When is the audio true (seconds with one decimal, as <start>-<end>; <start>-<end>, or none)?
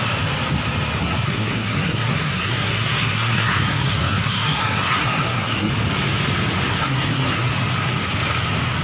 0.0-1.0; 5.7-6.7; 7.5-8.8